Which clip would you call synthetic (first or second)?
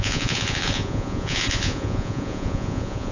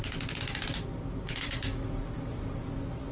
first